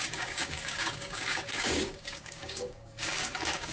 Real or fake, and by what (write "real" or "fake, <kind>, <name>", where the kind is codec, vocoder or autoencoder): fake, codec, DAC